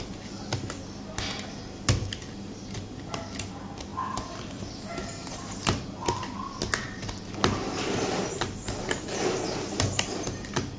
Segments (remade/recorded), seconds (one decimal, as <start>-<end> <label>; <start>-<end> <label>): 0.0-10.8 recorded